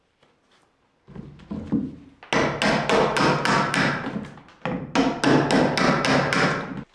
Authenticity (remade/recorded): recorded